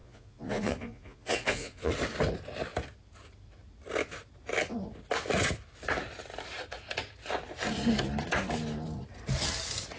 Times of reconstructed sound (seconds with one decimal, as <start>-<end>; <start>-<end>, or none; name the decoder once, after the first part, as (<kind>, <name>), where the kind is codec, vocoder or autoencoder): 0.0-1.9 (vocoder, Vocos)